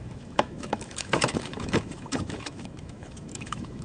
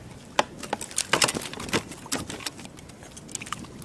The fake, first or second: first